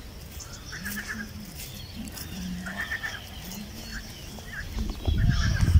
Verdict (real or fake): real